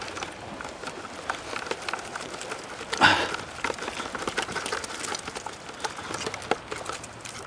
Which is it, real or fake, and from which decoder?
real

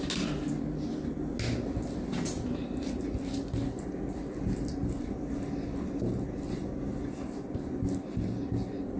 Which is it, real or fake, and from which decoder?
real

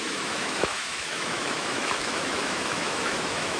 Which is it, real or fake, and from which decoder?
fake, autoencoder, DAC-VAE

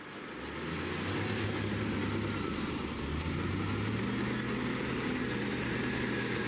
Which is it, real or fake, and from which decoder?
real